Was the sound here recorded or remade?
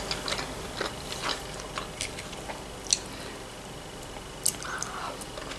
recorded